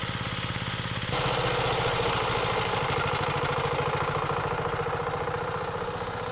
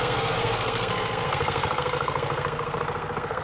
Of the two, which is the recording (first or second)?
first